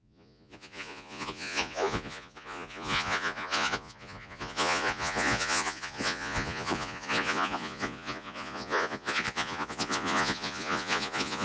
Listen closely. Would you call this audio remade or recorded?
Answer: remade